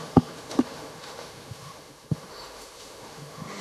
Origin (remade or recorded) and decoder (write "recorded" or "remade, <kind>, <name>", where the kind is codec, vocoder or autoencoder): remade, autoencoder, DAC-VAE